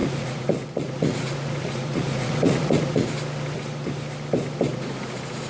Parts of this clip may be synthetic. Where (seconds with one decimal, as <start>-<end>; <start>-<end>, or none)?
0.0-3.1; 4.7-5.5

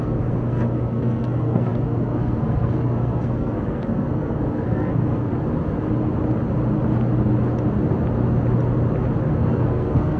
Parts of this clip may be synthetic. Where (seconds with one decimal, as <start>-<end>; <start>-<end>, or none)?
0.0-5.3; 9.2-10.2

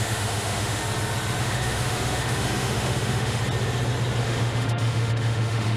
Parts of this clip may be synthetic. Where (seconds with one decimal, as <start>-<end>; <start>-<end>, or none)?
0.0-0.8; 1.4-3.4; 4.2-5.8

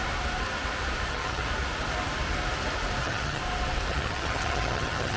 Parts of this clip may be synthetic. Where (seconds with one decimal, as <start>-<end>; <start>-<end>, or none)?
1.1-1.5; 3.0-3.4; 3.9-5.2

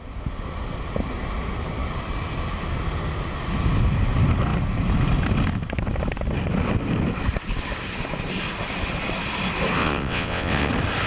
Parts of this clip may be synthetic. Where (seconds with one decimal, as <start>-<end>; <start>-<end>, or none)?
9.8-10.7

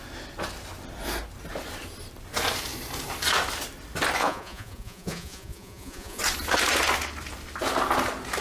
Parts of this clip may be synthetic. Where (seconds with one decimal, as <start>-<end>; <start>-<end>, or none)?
4.2-6.2

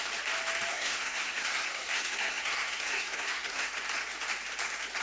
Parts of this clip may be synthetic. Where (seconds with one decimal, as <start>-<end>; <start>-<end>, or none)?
0.7-3.7

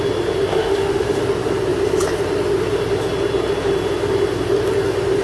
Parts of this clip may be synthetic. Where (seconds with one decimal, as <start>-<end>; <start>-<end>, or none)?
0.5-1.2